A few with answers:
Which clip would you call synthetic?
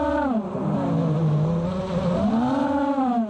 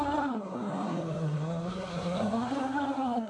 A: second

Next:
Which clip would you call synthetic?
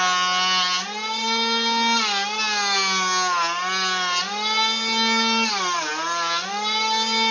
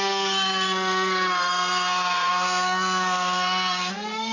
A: second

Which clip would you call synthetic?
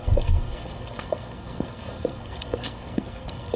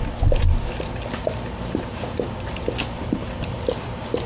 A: first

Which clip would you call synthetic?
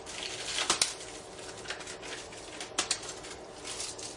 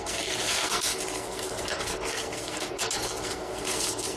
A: second